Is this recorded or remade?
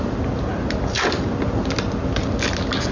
recorded